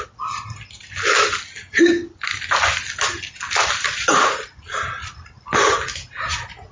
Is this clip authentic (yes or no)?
yes